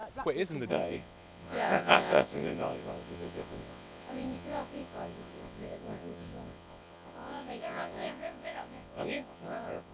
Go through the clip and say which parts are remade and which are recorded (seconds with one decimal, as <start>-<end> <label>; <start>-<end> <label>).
0.0-0.7 recorded; 0.7-9.9 remade